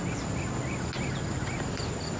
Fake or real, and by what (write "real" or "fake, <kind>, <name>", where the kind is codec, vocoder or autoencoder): real